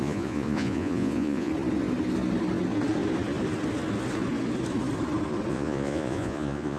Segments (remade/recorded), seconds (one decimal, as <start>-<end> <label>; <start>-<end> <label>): 0.0-1.5 remade; 1.5-5.5 recorded; 5.5-6.8 remade